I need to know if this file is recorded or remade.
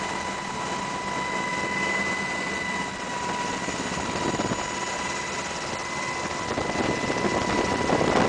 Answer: recorded